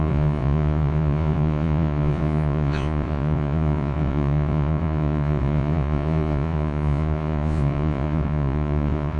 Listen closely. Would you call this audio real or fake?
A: fake